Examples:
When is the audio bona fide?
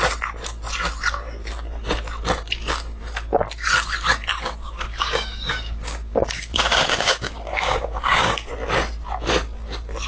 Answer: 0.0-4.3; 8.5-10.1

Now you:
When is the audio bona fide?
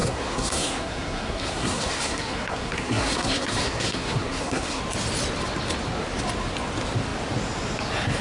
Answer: 4.8-8.2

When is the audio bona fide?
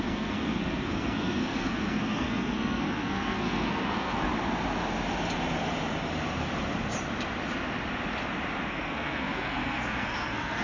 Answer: 4.3-8.7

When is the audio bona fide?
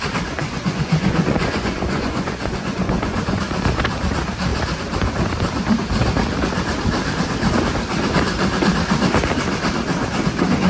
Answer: 0.0-0.4; 3.4-10.7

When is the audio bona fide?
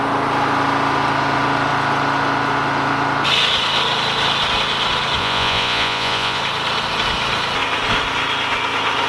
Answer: 0.0-5.2; 6.4-9.1